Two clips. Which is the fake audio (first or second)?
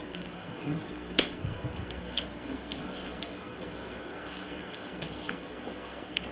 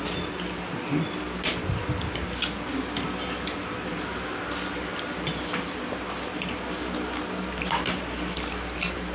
first